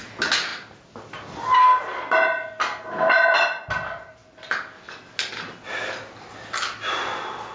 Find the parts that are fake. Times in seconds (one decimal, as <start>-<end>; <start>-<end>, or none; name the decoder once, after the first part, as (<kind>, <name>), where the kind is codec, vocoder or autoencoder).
none